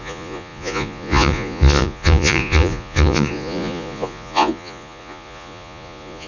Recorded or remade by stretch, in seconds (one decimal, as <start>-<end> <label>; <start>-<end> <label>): 0.0-6.3 remade